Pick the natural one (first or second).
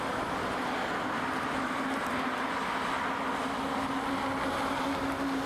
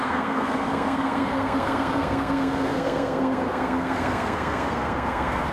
first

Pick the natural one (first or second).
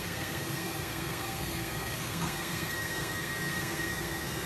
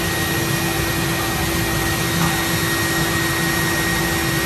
second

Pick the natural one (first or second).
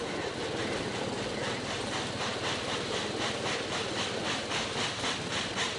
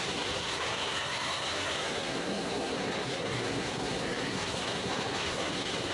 first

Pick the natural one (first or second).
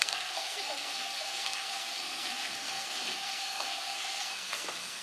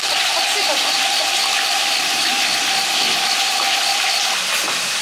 second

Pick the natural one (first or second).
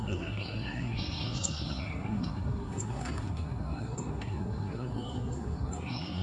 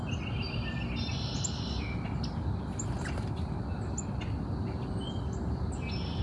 second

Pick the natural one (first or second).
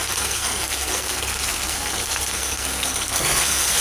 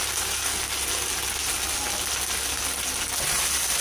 second